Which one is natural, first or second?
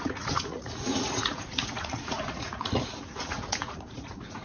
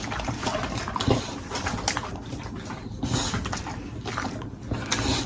second